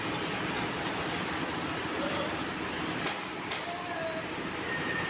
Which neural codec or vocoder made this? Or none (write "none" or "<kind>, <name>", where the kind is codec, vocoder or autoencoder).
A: none